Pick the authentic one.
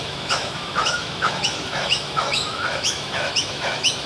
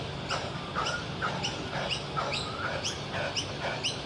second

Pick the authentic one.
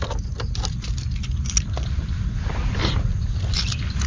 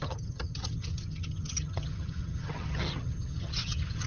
first